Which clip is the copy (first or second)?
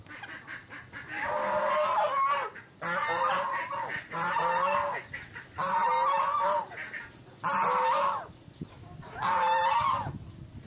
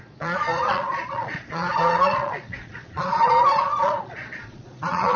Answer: second